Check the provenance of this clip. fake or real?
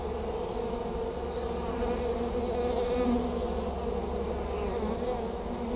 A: real